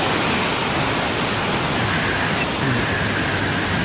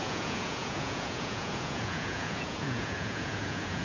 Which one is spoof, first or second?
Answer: second